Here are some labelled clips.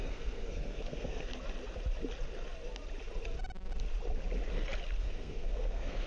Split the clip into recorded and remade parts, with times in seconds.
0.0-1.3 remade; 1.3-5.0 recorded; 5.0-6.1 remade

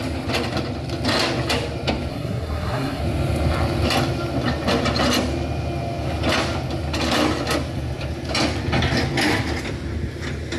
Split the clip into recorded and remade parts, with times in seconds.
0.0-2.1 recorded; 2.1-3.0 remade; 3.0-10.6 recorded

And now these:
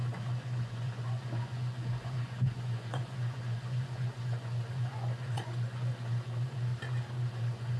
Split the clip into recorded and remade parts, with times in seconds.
0.0-6.7 remade; 6.7-7.3 recorded; 7.3-7.8 remade